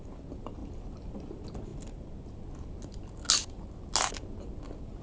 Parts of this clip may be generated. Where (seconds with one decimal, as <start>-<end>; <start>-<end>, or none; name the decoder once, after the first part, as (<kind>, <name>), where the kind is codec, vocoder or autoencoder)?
none